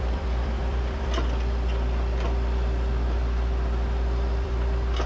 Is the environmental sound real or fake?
fake